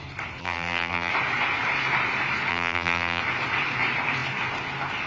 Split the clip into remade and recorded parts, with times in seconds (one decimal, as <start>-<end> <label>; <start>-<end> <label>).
0.0-0.4 recorded; 0.4-1.1 remade; 1.1-2.5 recorded; 2.5-3.2 remade; 3.2-5.1 recorded